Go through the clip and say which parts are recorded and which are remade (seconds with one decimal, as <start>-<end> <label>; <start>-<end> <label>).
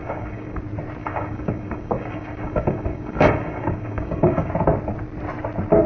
0.0-0.6 remade; 0.6-1.0 recorded; 1.0-4.5 remade; 4.5-5.9 recorded